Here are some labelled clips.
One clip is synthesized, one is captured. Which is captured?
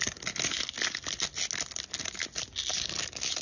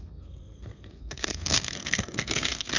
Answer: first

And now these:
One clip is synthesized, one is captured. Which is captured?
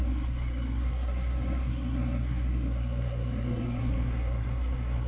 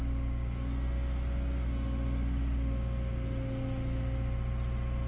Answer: second